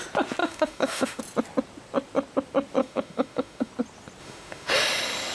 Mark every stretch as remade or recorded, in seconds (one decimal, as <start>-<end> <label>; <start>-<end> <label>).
0.0-0.4 recorded; 0.4-1.2 remade; 1.2-2.8 recorded; 2.8-3.7 remade; 3.7-4.2 recorded; 4.2-4.7 remade; 4.7-5.3 recorded